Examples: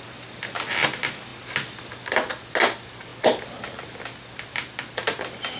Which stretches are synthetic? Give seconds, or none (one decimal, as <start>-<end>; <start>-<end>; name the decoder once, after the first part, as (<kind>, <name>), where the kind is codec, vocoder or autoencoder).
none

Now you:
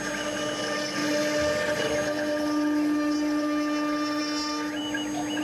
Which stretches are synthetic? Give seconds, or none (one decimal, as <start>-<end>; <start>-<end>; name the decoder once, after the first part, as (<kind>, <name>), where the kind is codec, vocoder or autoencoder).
none

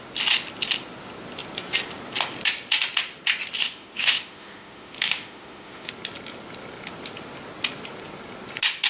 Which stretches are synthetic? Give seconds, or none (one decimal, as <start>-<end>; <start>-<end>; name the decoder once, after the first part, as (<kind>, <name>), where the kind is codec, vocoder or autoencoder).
3.6-5.9 (autoencoder, DAC-VAE)

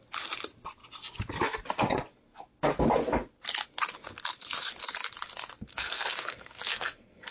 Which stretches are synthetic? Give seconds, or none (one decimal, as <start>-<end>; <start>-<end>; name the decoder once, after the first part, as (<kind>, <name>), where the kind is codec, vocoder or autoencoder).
5.7-7.3 (codec, SNAC)